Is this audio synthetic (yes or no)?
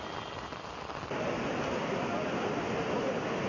no